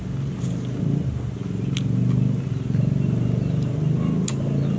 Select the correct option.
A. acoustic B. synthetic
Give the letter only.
A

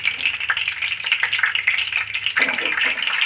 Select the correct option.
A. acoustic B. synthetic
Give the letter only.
A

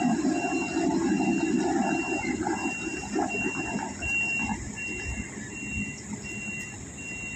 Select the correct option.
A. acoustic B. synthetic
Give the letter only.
A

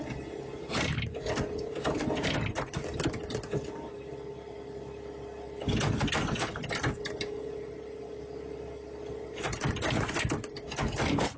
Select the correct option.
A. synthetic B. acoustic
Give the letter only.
B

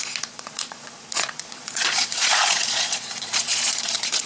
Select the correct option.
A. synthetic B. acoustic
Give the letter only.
A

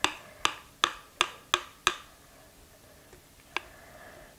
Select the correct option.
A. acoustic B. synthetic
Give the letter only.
A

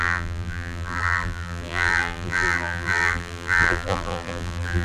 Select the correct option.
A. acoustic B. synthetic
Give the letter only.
B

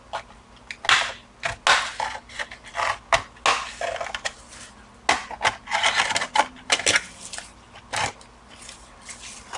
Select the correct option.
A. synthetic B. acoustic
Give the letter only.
B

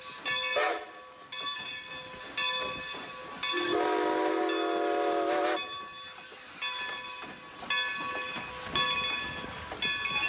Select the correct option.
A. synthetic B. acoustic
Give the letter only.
B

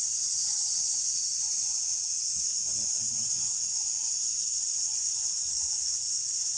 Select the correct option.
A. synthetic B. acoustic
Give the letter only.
A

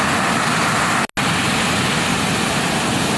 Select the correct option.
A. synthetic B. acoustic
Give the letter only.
B